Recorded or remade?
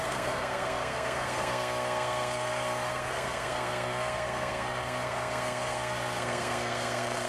remade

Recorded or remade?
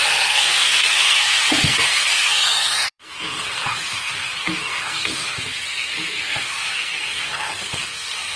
remade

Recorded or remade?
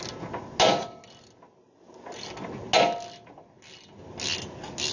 recorded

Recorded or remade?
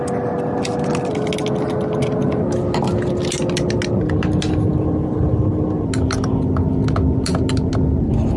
recorded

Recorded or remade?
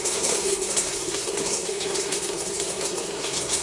remade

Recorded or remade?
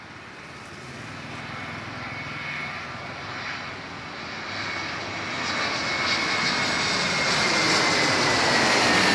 recorded